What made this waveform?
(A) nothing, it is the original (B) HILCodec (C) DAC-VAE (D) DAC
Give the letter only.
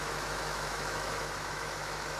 C